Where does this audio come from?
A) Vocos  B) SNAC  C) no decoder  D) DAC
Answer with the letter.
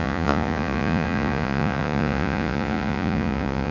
A